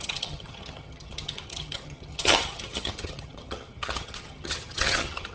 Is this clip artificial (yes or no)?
yes